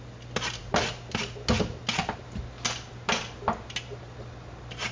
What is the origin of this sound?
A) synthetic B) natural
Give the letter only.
B